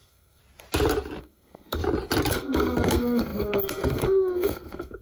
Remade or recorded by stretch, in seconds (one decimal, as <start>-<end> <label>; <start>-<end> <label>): 0.0-0.4 remade; 0.4-1.2 recorded; 1.2-1.8 remade; 1.8-2.3 recorded; 2.3-5.0 remade